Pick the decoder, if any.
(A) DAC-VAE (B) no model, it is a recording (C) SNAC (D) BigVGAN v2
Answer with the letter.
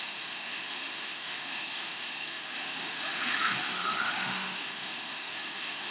A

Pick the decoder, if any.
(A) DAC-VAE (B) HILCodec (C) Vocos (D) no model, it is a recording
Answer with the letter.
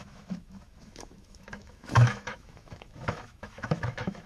A